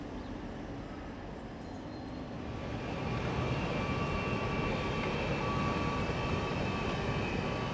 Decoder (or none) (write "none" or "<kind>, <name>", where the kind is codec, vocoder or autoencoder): none